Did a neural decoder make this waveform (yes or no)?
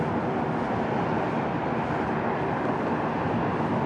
no